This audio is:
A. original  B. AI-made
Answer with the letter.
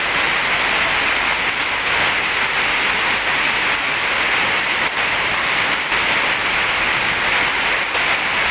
A